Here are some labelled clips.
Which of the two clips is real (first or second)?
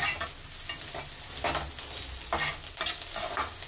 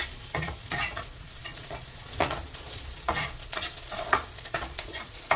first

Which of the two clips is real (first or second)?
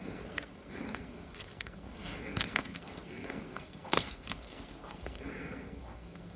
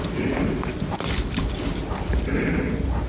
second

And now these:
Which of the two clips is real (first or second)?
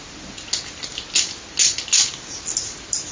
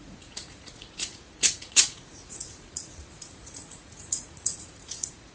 first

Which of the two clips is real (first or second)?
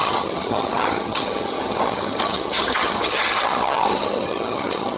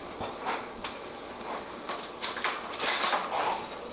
second